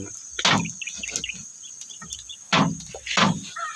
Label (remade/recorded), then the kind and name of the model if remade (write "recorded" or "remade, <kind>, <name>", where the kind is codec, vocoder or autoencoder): recorded